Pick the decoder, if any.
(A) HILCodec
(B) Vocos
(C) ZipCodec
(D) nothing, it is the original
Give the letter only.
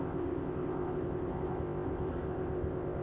C